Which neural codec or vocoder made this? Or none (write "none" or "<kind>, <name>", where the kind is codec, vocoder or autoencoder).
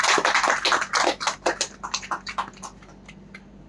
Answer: none